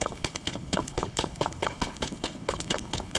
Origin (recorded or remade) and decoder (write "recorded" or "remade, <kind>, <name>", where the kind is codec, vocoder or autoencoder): remade, codec, HILCodec